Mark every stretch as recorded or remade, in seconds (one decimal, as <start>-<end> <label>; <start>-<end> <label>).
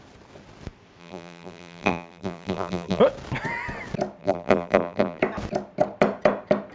0.0-1.0 recorded; 1.0-3.0 remade; 3.0-4.2 recorded; 4.2-5.2 remade; 5.2-6.7 recorded